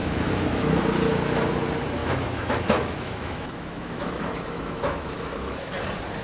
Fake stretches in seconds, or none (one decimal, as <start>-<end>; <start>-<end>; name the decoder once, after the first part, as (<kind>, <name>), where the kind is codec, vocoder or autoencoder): 0.0-0.8 (autoencoder, DAC-VAE); 2.0-5.7